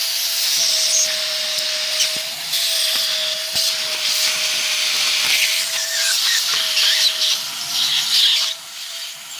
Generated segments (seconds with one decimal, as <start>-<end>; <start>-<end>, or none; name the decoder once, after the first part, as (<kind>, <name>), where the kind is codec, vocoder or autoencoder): none